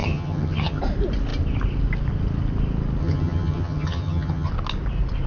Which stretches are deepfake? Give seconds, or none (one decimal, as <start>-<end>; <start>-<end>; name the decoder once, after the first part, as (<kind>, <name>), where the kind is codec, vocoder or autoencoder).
0.0-0.8 (vocoder, HiFi-GAN); 3.0-4.5